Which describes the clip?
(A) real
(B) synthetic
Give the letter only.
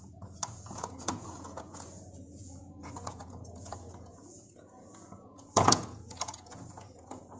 B